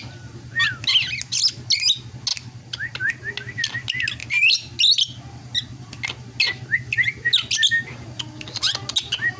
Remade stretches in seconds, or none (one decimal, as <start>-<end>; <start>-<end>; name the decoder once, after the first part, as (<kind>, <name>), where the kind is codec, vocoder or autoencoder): none